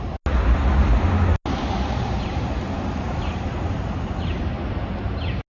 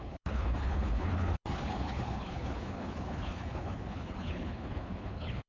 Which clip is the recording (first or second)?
first